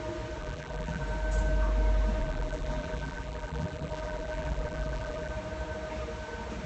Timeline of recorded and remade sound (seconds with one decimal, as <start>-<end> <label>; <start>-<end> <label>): 0.0-0.4 recorded; 0.4-1.0 remade; 1.0-2.2 recorded; 2.2-5.3 remade; 5.3-6.7 recorded